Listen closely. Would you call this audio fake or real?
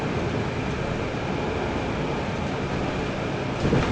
real